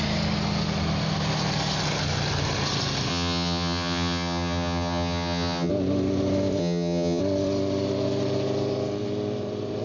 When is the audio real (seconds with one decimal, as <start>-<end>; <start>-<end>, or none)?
0.0-3.1; 5.7-6.6; 7.2-9.8

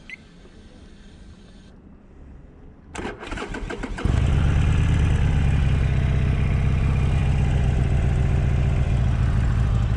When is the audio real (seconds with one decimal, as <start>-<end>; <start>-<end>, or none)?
0.0-10.0

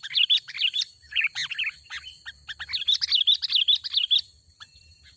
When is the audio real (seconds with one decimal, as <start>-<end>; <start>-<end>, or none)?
1.4-4.5

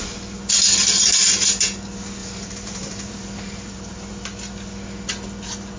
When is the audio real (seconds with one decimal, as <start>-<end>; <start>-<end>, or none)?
0.0-2.2; 4.1-5.8